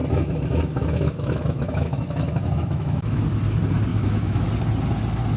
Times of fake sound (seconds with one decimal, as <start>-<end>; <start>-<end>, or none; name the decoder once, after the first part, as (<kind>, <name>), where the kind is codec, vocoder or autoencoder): 0.0-3.2 (autoencoder, DAC-VAE); 3.9-4.5

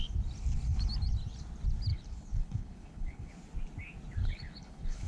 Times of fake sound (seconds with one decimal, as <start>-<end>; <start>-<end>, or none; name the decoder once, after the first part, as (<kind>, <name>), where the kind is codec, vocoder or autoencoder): 1.9-3.3 (codec, HILCodec); 4.2-5.1

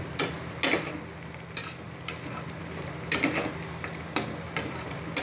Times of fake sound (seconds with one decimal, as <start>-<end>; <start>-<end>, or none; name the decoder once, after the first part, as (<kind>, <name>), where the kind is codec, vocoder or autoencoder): none